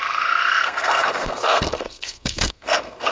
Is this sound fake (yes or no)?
yes